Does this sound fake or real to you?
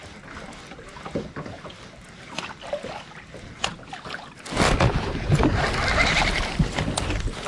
real